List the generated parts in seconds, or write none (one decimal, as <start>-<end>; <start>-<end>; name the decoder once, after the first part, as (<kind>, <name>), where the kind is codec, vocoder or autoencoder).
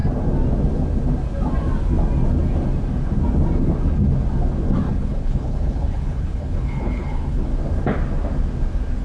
4.9-7.5 (codec, HILCodec)